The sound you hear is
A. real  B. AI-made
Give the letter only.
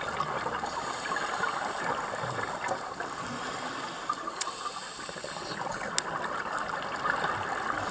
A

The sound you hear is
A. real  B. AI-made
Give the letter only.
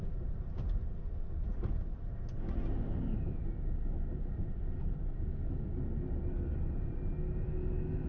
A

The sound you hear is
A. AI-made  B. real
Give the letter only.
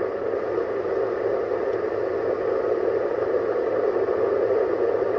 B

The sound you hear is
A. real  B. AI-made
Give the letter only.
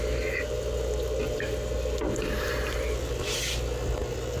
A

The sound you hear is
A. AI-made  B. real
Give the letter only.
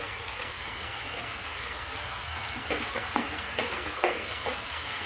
A